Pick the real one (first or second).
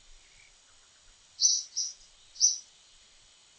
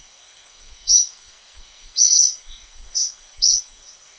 first